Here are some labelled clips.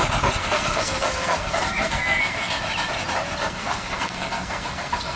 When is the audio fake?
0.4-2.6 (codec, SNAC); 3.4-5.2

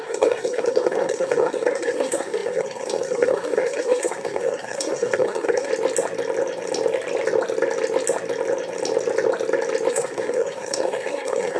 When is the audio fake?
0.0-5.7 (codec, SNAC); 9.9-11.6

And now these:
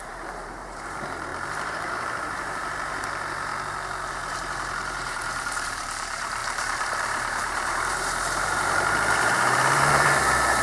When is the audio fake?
0.0-3.5 (vocoder, BigVGAN v2); 4.1-10.6